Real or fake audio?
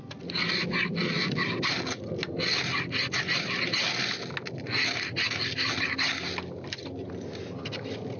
real